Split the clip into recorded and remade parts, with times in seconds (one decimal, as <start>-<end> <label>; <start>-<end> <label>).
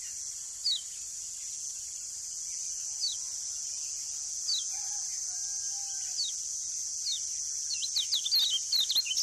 0.0-9.2 recorded